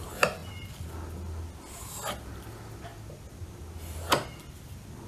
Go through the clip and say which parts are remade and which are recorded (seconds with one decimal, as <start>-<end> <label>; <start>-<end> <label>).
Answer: 0.0-5.1 recorded